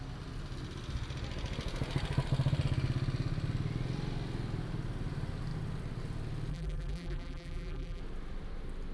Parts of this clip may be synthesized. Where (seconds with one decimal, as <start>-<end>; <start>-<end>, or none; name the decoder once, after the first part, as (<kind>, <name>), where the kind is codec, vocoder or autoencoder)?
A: 6.5-8.0 (vocoder, BigVGAN v2)